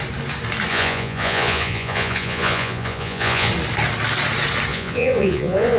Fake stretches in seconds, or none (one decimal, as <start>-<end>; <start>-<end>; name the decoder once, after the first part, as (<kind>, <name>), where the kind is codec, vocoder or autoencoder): 0.7-3.5 (vocoder, Vocos); 4.7-5.8

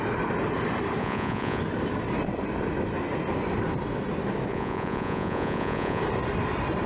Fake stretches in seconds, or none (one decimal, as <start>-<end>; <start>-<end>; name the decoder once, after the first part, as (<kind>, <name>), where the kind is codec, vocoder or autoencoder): 1.0-1.6 (vocoder, Vocos); 4.5-6.0

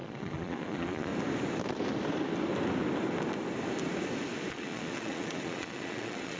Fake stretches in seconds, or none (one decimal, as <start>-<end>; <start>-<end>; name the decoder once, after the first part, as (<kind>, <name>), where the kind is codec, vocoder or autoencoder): 0.0-1.1 (vocoder, Vocos); 4.5-6.4

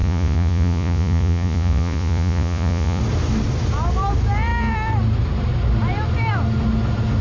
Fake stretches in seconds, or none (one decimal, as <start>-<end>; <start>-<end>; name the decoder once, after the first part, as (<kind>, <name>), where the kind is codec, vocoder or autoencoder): 0.0-3.0 (vocoder, Vocos)